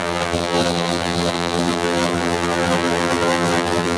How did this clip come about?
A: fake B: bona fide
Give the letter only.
A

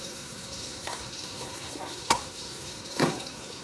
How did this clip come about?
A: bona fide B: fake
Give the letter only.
B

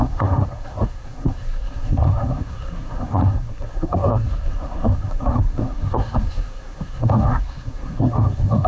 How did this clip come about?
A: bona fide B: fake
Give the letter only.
B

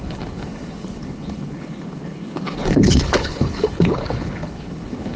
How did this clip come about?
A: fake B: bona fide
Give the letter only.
A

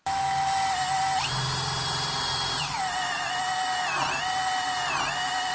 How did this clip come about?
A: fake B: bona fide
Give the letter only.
B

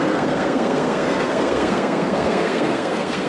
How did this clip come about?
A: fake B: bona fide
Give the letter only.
A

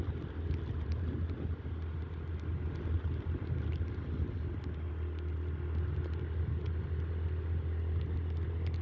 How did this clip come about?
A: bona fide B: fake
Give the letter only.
A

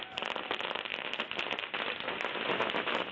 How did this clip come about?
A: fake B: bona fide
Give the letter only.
B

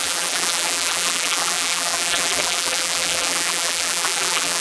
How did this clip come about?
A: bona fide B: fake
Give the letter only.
B